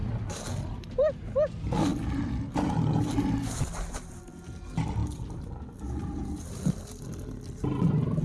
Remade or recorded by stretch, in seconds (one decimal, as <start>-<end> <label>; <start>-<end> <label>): 0.0-8.2 recorded